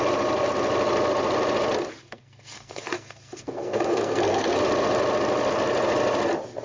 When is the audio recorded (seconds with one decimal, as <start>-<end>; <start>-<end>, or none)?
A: 0.0-2.0; 4.6-6.6